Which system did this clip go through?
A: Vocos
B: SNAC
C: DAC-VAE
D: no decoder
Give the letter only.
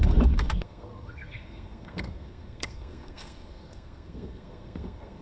B